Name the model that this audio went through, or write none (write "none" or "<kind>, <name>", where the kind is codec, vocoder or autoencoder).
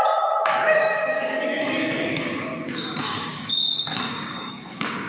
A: codec, DAC